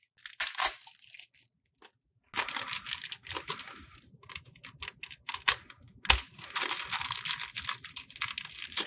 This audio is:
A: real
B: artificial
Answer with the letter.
A